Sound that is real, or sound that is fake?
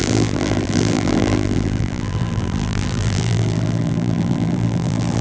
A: fake